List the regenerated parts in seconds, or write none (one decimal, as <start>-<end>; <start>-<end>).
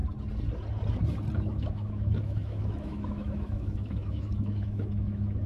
1.4-5.5